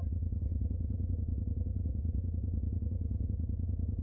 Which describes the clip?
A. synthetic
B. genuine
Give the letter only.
A